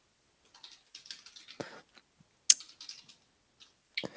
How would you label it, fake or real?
real